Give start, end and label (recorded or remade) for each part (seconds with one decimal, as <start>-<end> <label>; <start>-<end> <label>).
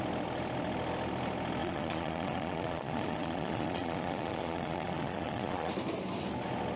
0.0-1.6 recorded; 1.6-5.7 remade; 5.7-6.8 recorded